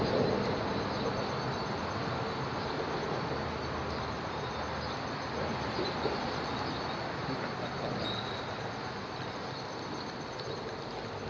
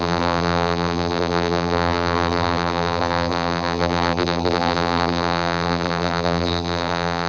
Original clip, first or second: first